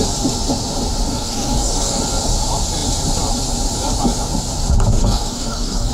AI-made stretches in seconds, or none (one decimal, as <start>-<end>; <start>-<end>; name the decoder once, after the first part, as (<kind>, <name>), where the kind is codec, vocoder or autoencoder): 1.1-2.0 (codec, DAC); 4.9-5.9